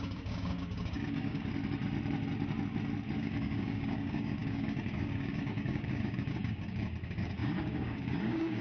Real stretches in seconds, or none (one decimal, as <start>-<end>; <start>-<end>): 1.5-3.2